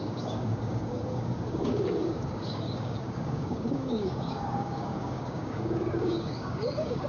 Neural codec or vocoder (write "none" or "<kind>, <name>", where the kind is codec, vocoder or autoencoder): codec, DAC